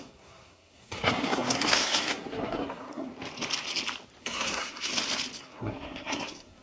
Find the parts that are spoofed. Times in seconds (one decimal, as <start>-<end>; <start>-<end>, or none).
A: 0.0-3.1; 4.2-4.9; 5.4-6.6